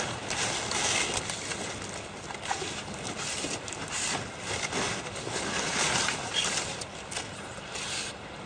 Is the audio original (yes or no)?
yes